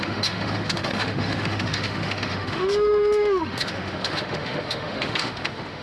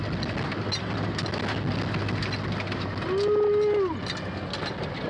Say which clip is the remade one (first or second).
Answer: first